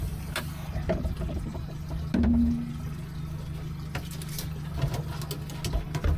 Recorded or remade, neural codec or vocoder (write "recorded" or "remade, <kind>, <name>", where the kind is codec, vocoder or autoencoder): recorded